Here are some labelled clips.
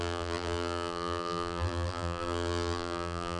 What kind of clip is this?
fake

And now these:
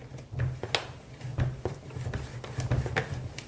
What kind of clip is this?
real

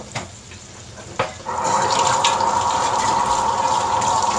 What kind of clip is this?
real